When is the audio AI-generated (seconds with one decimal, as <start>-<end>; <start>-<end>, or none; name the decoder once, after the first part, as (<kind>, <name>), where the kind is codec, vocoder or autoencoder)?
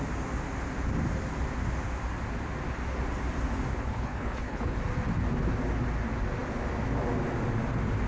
3.7-4.8 (codec, HILCodec)